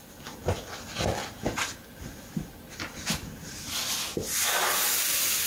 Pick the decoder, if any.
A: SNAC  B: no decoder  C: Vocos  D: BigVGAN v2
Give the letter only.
B